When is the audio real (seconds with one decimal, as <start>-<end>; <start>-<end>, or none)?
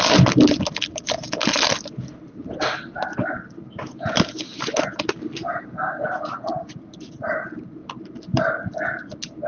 0.0-9.5